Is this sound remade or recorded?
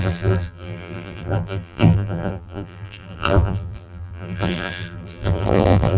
remade